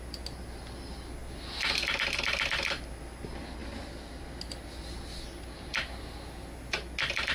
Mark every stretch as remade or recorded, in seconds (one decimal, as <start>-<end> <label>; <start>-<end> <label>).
0.0-7.3 recorded